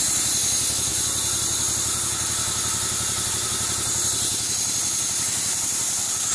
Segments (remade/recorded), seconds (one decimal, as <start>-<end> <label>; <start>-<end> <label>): 0.0-4.3 recorded; 4.3-6.3 remade